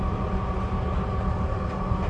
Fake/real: real